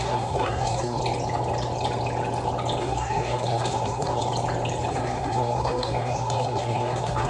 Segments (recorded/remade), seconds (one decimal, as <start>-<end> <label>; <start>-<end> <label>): 0.0-1.0 remade; 1.0-2.8 recorded; 2.8-4.2 remade; 4.2-4.9 recorded; 4.9-7.3 remade